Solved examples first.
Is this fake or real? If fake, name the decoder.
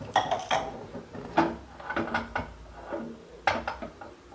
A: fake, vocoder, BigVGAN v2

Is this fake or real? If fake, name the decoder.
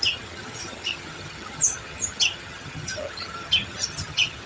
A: fake, vocoder, HiFi-GAN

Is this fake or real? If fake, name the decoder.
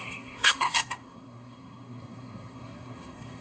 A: fake, codec, SNAC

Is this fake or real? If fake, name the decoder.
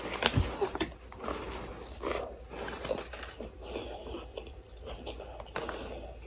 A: real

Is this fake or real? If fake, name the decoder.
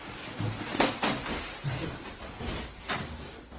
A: real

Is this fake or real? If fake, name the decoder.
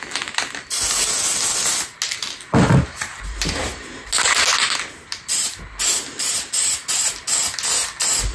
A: real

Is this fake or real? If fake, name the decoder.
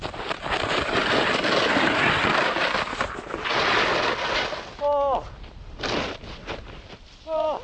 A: real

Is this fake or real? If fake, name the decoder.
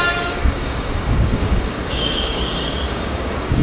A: fake, codec, DAC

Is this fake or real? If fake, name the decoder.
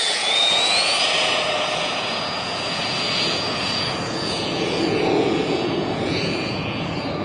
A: fake, vocoder, Vocos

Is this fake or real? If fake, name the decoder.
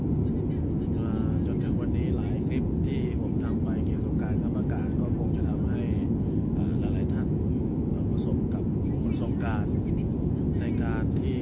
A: real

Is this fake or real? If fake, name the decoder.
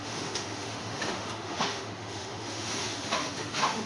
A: fake, autoencoder, DAC-VAE